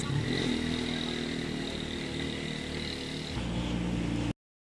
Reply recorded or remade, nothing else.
recorded